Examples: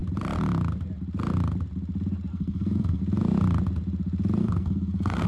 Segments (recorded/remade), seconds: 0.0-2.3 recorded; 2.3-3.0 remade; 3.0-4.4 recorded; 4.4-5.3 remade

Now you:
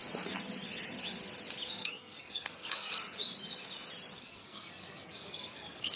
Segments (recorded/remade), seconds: 0.0-1.7 recorded; 1.7-2.9 remade; 2.9-4.2 recorded; 4.2-6.0 remade

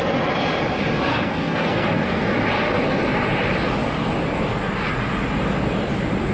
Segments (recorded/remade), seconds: 0.0-1.1 recorded; 1.1-2.2 remade; 2.2-6.3 recorded

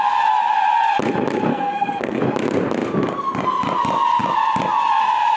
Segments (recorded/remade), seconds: 0.0-1.5 recorded; 1.5-2.2 remade; 2.2-5.4 recorded

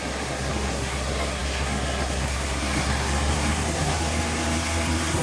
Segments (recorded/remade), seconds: 0.0-5.2 remade

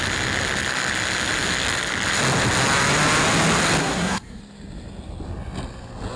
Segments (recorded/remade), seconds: 0.0-3.8 recorded; 3.8-4.4 remade; 4.4-6.2 recorded

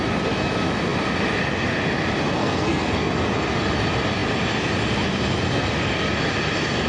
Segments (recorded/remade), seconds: 0.0-2.4 recorded; 2.4-3.1 remade; 3.1-6.9 recorded